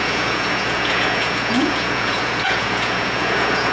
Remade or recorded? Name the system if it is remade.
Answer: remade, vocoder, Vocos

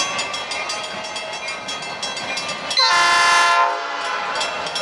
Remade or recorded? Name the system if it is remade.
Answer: recorded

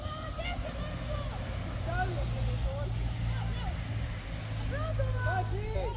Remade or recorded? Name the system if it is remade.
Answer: recorded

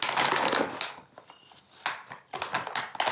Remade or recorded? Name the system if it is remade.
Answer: recorded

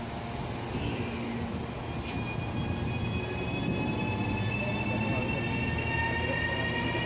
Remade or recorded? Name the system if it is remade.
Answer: recorded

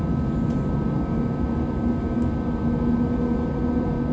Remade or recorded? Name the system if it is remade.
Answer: recorded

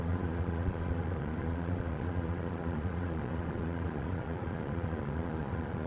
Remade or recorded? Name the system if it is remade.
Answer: remade, vocoder, Vocos